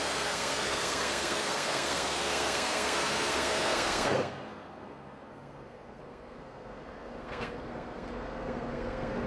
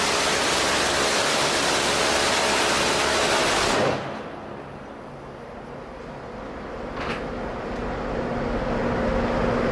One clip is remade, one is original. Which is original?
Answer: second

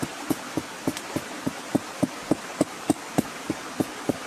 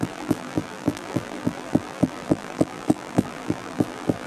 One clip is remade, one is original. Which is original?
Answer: first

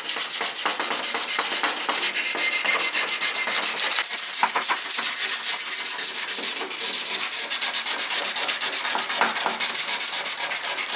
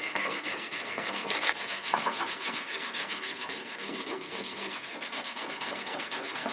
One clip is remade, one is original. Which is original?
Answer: first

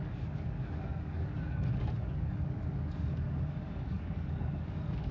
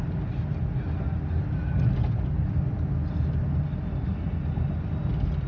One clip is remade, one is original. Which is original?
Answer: second